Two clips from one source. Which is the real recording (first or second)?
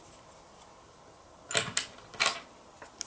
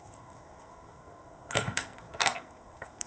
first